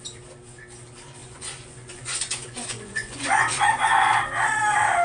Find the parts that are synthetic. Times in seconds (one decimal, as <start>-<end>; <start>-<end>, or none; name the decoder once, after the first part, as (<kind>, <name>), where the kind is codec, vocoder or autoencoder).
1.2-4.2 (vocoder, Vocos)